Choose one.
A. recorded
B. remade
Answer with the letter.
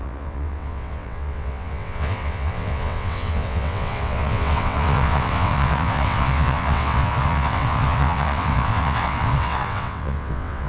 B